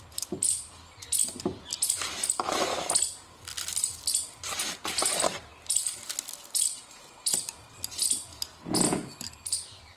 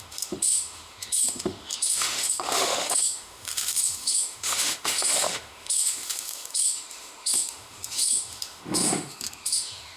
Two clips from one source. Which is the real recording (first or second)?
first